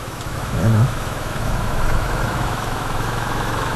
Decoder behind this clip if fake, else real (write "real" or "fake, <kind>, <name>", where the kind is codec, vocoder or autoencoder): fake, autoencoder, DAC-VAE